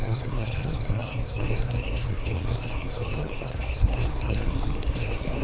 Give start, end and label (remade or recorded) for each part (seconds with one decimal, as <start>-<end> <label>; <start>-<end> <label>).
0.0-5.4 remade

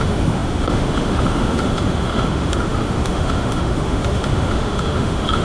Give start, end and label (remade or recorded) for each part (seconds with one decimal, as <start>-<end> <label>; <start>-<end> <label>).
0.0-5.4 remade

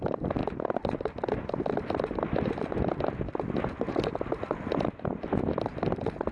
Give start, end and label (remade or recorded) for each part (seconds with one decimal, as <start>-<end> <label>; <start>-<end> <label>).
0.0-0.4 remade; 0.4-2.5 recorded; 2.5-6.3 remade

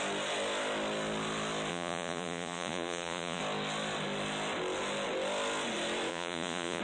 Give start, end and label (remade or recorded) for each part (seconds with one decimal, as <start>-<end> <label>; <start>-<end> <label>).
0.0-1.7 recorded; 1.7-3.4 remade; 3.4-6.1 recorded; 6.1-6.8 remade

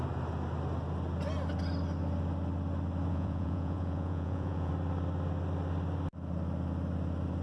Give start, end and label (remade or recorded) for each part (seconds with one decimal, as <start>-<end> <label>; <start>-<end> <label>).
0.0-3.1 recorded; 3.1-4.7 remade; 4.7-7.4 recorded

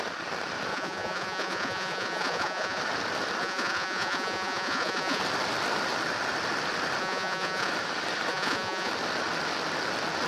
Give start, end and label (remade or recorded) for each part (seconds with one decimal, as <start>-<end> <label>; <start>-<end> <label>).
0.0-0.7 recorded; 0.7-2.8 remade; 2.8-3.4 recorded; 3.4-5.2 remade; 5.2-7.0 recorded; 7.0-7.7 remade; 7.7-8.3 recorded; 8.3-8.9 remade; 8.9-10.3 recorded

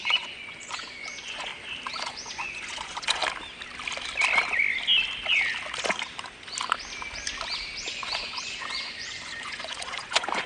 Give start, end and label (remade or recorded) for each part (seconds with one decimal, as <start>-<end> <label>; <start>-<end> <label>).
0.0-1.5 remade; 1.5-2.0 recorded; 2.0-3.2 remade; 3.2-7.9 recorded; 7.9-10.5 remade

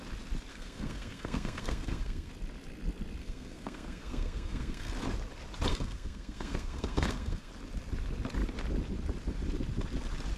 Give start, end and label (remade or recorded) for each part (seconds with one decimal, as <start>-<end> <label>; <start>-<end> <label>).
0.0-0.5 recorded; 0.5-2.3 remade; 2.3-3.2 recorded; 3.2-4.9 remade; 4.9-5.7 recorded; 5.7-7.5 remade; 7.5-10.4 recorded